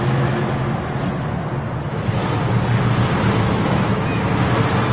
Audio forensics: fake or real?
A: real